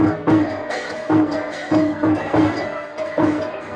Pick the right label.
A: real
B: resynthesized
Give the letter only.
B